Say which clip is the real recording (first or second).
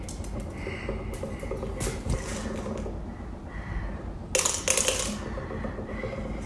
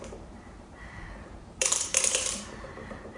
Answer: first